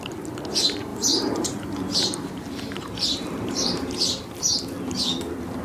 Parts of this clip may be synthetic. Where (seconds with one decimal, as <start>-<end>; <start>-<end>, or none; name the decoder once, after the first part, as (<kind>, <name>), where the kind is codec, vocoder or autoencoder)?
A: 0.9-4.3 (vocoder, BigVGAN v2)